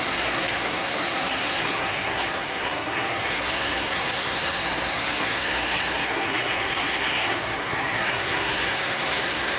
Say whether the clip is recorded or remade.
remade